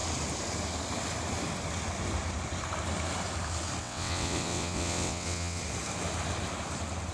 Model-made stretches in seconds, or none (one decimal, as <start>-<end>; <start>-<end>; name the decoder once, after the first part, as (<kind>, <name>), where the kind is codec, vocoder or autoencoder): 3.8-5.6 (vocoder, WaveNeXt)